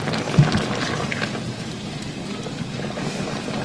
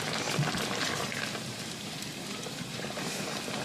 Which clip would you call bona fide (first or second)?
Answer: first